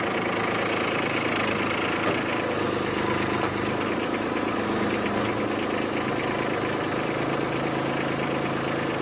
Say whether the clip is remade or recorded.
recorded